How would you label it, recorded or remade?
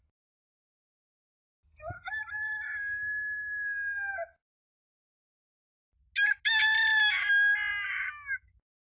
recorded